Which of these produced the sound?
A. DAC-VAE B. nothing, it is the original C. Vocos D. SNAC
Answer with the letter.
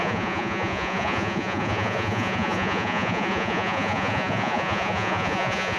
C